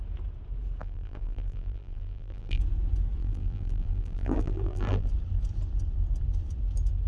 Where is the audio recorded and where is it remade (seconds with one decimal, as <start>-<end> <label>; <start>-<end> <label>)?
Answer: 0.0-0.8 recorded; 0.8-2.6 remade; 2.6-3.2 recorded; 3.2-5.1 remade; 5.1-7.1 recorded